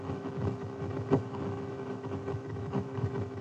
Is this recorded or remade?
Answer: remade